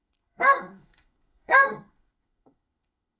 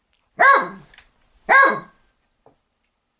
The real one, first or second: second